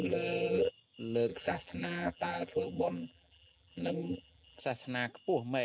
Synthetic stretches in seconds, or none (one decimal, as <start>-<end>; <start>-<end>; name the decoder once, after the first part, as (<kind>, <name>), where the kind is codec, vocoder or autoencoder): 0.0-0.7 (vocoder, BigVGAN v2); 1.3-4.6